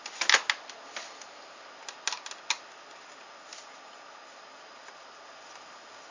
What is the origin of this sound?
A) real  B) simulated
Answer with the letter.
A